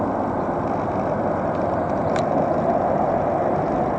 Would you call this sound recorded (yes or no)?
no